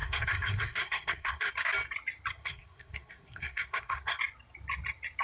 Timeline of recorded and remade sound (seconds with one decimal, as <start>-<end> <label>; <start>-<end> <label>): 0.0-1.5 remade; 1.5-2.4 recorded; 2.4-4.2 remade; 4.2-5.2 recorded